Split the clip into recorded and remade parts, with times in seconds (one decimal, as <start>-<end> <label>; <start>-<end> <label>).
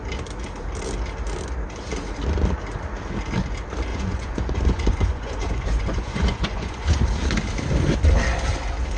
0.0-3.9 recorded; 3.9-7.0 remade; 7.0-9.0 recorded